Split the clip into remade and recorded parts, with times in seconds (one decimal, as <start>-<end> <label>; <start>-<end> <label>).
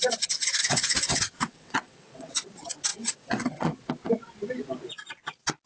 0.0-0.6 recorded; 0.6-2.3 remade; 2.3-2.9 recorded; 2.9-3.8 remade; 3.8-5.7 recorded